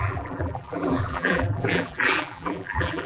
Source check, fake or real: fake